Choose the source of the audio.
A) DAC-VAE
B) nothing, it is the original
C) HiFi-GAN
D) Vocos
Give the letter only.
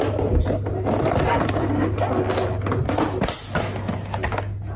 B